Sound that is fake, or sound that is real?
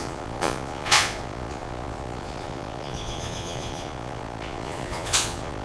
fake